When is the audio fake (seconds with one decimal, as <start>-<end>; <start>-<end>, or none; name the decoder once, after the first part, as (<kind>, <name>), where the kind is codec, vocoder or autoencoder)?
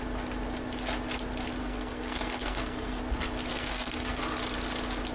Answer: 1.6-3.0 (codec, SNAC); 3.5-4.2